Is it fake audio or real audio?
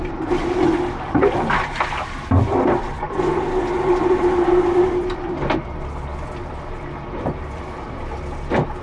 fake